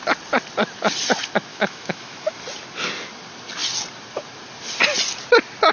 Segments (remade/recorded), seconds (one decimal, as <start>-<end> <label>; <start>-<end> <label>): 0.0-1.5 recorded; 1.5-2.3 remade; 2.3-5.7 recorded